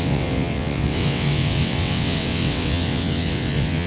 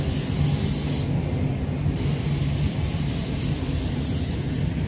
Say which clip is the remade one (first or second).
first